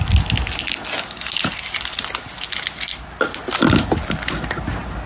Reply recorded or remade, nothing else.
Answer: recorded